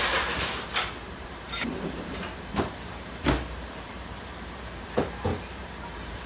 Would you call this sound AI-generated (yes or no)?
yes